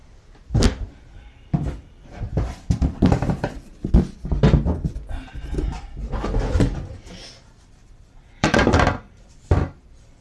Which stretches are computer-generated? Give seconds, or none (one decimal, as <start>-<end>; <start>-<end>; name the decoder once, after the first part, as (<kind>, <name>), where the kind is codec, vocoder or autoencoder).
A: 1.0-3.7 (vocoder, BigVGAN v2); 7.7-10.2